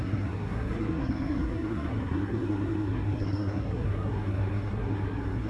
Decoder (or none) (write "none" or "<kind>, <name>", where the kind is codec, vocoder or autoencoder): codec, SNAC